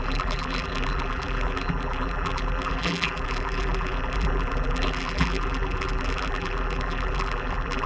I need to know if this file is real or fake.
fake